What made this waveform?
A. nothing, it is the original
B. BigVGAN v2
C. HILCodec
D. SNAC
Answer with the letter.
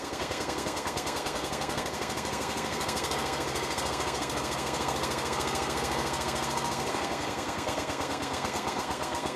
D